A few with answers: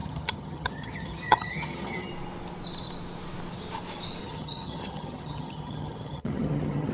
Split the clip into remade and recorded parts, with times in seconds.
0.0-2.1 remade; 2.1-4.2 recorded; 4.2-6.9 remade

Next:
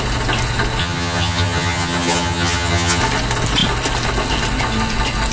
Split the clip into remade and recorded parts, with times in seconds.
0.0-0.8 recorded; 0.8-3.0 remade; 3.0-5.3 recorded

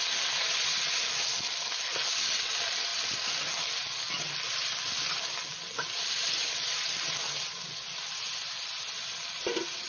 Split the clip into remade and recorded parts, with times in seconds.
0.0-9.9 recorded

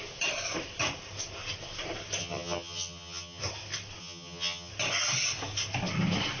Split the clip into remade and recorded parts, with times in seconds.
0.0-2.2 recorded; 2.2-3.4 remade; 3.4-4.0 recorded; 4.0-4.7 remade; 4.7-6.4 recorded

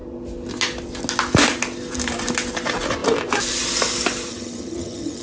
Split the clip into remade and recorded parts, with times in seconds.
0.0-4.3 recorded; 4.3-5.2 remade